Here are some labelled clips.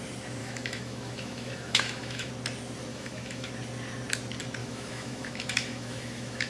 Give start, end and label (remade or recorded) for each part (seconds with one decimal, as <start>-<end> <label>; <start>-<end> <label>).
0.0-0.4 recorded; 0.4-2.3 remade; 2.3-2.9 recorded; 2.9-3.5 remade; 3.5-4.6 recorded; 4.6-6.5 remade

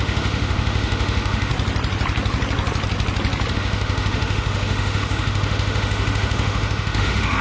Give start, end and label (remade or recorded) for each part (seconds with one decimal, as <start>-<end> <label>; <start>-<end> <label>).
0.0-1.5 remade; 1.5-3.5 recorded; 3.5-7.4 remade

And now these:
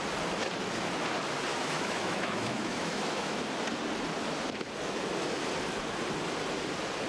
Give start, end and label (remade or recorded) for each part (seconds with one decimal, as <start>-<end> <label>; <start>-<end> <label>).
0.0-1.5 recorded; 1.5-3.4 remade; 3.4-7.1 recorded

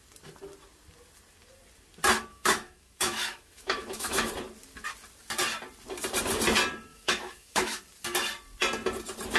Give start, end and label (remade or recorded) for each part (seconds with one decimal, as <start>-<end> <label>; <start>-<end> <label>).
0.0-2.3 recorded; 2.3-4.3 remade; 4.3-6.9 recorded; 6.9-7.8 remade; 7.8-9.4 recorded

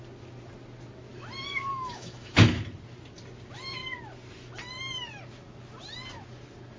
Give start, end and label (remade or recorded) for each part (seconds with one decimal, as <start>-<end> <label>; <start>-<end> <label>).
0.0-1.7 recorded; 1.7-2.6 remade; 2.6-6.8 recorded